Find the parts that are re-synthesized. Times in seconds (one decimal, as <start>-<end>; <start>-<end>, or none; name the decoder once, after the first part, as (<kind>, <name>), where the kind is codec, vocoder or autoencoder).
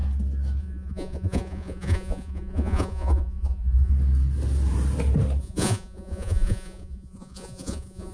0.6-3.9 (vocoder, Vocos); 5.4-8.1